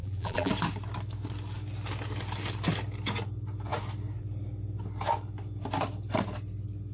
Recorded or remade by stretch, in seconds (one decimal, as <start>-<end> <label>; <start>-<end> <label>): 0.0-0.5 remade; 0.5-6.9 recorded